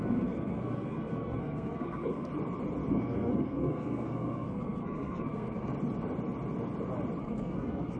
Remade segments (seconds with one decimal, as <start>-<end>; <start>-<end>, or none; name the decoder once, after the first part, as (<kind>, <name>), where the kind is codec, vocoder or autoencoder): 0.0-2.3 (codec, SNAC); 2.9-5.7; 7.2-8.0